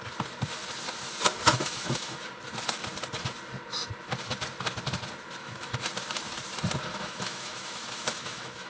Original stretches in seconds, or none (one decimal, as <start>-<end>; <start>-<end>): 0.0-1.4; 2.2-5.4; 5.9-6.9

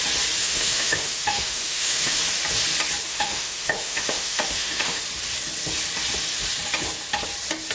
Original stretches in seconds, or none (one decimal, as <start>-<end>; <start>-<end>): 0.0-0.4; 2.2-3.1; 5.0-7.7

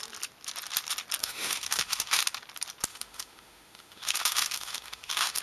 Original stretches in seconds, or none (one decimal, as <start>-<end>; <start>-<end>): 0.0-1.2; 2.2-2.9

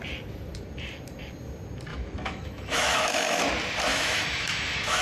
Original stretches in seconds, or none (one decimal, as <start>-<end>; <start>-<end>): 0.0-1.9; 3.4-3.9